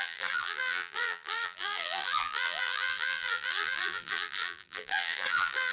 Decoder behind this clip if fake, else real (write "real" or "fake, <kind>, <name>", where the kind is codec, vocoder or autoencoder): fake, vocoder, BigVGAN v2